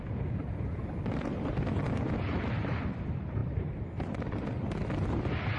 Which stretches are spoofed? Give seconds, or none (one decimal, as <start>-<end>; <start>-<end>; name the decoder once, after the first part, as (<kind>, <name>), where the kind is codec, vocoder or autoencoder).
3.4-4.6 (vocoder, BigVGAN v2)